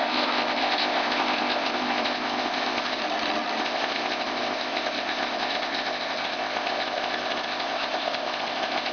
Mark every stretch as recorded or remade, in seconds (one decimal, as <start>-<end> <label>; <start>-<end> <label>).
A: 0.0-3.0 remade; 3.0-3.6 recorded; 3.6-8.9 remade